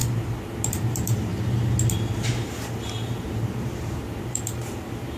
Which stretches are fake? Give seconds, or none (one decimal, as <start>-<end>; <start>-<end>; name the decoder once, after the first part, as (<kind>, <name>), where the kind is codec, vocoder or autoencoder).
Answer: 0.7-1.3 (vocoder, BigVGAN v2); 2.3-5.2